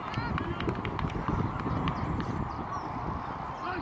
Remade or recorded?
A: remade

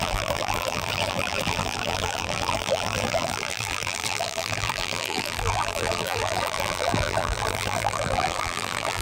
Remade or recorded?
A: remade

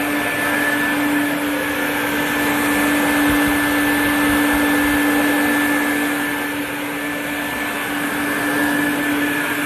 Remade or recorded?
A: recorded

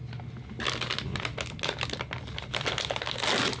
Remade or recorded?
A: recorded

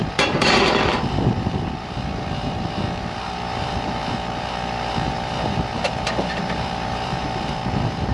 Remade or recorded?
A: remade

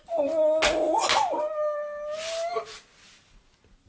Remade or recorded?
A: recorded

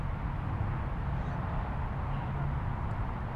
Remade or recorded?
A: recorded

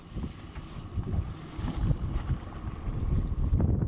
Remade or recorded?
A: recorded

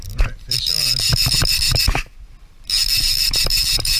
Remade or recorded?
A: remade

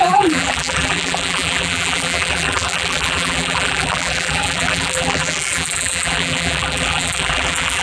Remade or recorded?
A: remade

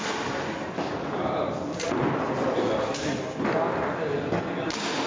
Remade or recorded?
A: recorded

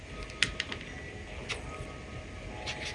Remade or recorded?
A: recorded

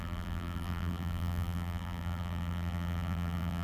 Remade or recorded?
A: remade